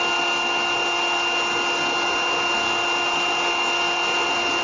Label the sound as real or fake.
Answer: real